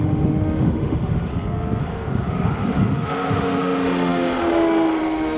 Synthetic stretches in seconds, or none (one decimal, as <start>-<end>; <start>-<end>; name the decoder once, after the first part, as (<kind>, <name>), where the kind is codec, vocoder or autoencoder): 0.0-1.3 (autoencoder, DAC-VAE); 1.8-5.4